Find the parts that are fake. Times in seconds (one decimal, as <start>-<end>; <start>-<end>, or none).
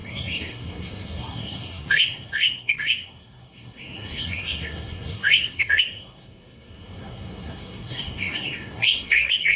0.0-9.6